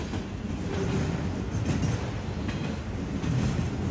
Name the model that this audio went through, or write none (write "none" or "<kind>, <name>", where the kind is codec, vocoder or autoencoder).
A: none